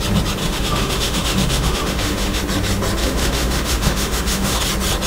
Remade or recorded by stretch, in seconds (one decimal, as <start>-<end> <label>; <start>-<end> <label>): 0.0-0.4 recorded; 0.4-2.4 remade; 2.4-3.0 recorded; 3.0-4.6 remade; 4.6-5.1 recorded